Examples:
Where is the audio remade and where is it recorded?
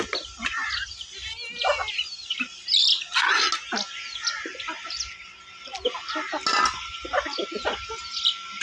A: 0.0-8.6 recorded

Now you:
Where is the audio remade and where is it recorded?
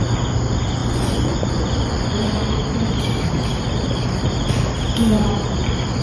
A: 0.0-0.8 recorded; 0.8-2.5 remade; 2.5-6.0 recorded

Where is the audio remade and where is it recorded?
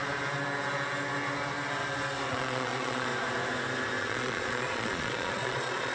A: 0.0-2.3 recorded; 2.3-3.1 remade; 3.1-4.0 recorded; 4.0-5.9 remade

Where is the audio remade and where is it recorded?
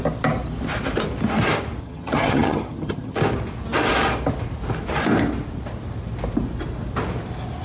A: 0.0-1.8 recorded; 1.8-3.2 remade; 3.2-7.6 recorded